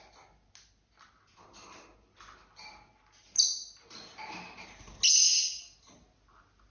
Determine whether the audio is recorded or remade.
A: recorded